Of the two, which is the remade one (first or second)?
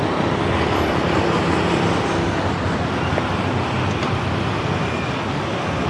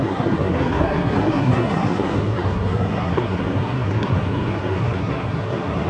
second